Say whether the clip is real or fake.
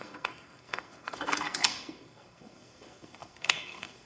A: fake